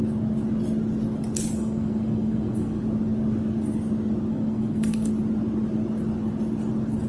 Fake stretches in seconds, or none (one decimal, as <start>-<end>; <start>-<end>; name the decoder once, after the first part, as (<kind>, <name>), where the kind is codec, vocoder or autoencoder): 1.6-2.8 (codec, SNAC); 4.3-5.1